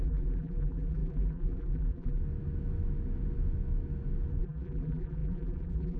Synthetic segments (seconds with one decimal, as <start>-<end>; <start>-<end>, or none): 0.0-2.2; 4.3-6.0